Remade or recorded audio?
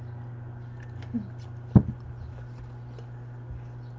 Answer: recorded